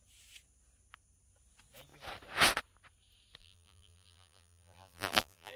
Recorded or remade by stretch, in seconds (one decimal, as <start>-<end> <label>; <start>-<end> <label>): 0.0-3.4 recorded; 3.4-5.6 remade